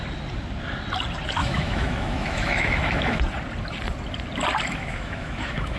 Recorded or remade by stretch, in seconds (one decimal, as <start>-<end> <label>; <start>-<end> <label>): 0.0-1.4 recorded; 1.4-3.2 remade; 3.2-4.7 recorded; 4.7-5.8 remade

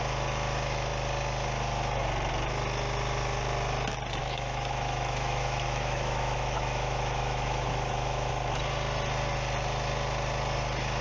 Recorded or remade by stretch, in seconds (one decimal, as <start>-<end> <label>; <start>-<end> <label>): 0.0-4.2 recorded; 4.2-8.3 remade; 8.3-11.0 recorded

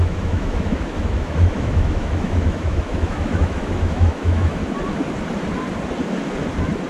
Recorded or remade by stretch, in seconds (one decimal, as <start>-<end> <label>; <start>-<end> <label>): 0.0-4.6 remade; 4.6-6.9 recorded

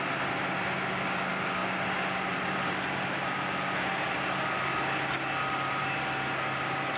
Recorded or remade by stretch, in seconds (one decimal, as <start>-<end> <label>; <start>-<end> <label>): 0.0-7.0 recorded

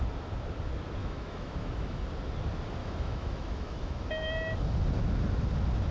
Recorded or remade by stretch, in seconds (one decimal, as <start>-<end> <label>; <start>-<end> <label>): 0.0-1.0 recorded; 1.0-2.0 remade; 2.0-2.8 recorded; 2.8-4.0 remade; 4.0-5.9 recorded

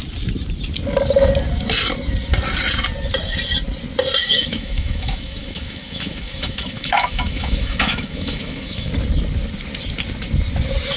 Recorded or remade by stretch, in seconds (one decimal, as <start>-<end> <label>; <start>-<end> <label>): 0.0-4.2 recorded; 4.2-8.9 remade; 8.9-11.0 recorded

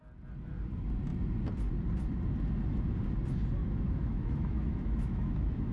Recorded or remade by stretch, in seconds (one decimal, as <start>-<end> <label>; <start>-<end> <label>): 0.0-3.6 recorded; 3.6-5.7 remade

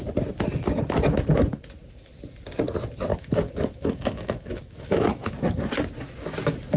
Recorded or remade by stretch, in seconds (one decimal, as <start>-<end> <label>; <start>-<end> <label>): 0.0-3.1 recorded; 3.1-5.3 remade; 5.3-6.8 recorded